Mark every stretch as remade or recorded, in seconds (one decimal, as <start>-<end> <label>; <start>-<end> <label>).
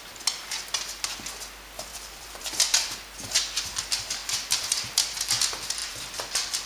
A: 0.0-1.9 recorded; 1.9-2.9 remade; 2.9-5.8 recorded; 5.8-6.7 remade